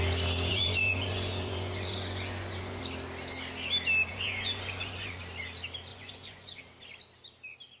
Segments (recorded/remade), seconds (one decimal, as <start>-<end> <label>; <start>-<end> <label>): 0.0-0.5 recorded; 0.5-2.8 remade; 2.8-4.1 recorded; 4.1-5.2 remade; 5.2-5.9 recorded; 5.9-6.6 remade; 6.6-7.8 recorded